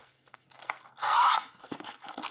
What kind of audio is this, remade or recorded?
remade